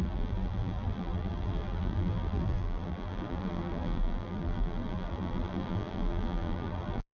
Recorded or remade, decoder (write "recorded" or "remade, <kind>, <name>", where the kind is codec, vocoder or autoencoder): remade, vocoder, BigVGAN v2